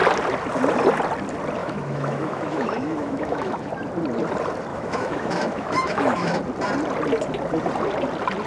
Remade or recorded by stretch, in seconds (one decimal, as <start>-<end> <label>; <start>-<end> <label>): 0.0-1.6 recorded; 1.6-3.7 remade; 3.7-4.7 recorded; 4.7-6.4 remade; 6.4-8.5 recorded